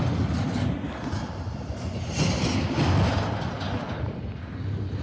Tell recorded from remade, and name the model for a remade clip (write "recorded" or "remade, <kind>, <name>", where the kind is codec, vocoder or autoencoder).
recorded